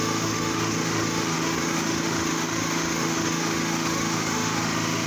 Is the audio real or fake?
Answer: fake